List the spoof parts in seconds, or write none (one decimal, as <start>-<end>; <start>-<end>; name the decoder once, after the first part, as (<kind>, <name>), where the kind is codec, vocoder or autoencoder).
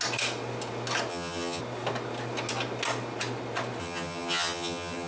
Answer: 1.1-1.6 (vocoder, HiFi-GAN); 3.8-5.1